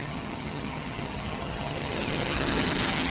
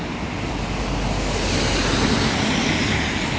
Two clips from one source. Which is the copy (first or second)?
first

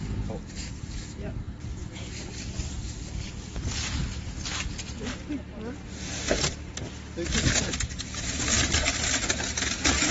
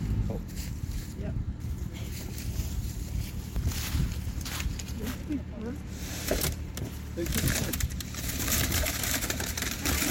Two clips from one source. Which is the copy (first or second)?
second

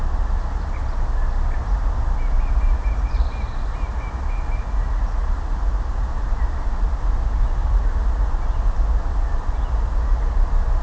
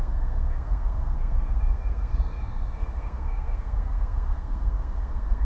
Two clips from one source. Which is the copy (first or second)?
second